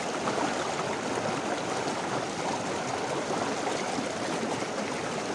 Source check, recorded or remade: recorded